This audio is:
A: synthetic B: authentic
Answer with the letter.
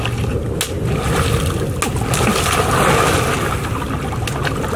B